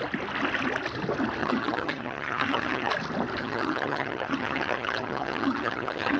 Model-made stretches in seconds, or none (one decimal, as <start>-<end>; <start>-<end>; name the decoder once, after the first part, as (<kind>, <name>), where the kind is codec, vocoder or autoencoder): 1.4-2.9 (vocoder, HiFi-GAN); 3.4-6.2